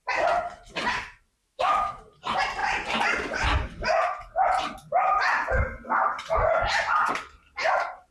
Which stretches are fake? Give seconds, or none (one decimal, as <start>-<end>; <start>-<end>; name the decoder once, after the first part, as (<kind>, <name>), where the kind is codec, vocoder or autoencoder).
1.4-2.0 (autoencoder, DAC-VAE)